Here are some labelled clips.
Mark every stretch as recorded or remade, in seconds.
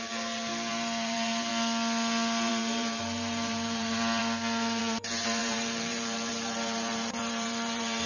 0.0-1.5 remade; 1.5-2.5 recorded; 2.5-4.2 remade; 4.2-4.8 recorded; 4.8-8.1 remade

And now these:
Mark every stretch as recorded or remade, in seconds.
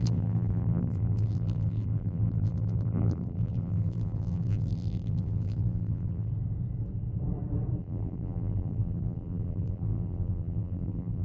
0.0-6.3 remade; 6.3-7.8 recorded; 7.8-11.2 remade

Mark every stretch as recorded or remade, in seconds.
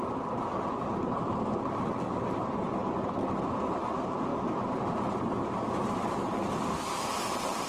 0.0-7.7 remade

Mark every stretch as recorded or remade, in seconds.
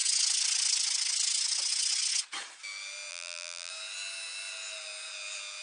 0.0-3.1 recorded; 3.1-3.7 remade; 3.7-5.6 recorded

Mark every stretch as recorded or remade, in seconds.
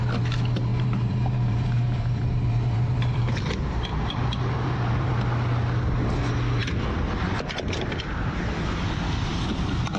0.0-0.7 recorded; 0.7-5.2 remade; 5.2-10.0 recorded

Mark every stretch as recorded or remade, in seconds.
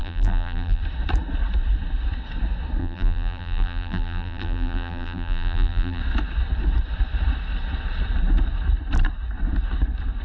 0.0-0.8 remade; 0.8-2.8 recorded; 2.8-6.0 remade; 6.0-10.2 recorded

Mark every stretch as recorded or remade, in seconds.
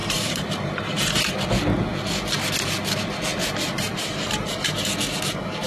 0.0-1.3 remade; 1.3-3.3 recorded; 3.3-4.8 remade; 4.8-5.7 recorded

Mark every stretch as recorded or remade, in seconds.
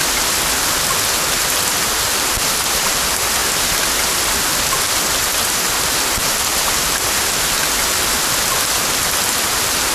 0.0-9.9 recorded